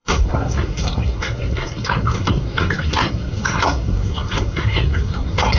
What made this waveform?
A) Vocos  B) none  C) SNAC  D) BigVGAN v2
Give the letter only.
C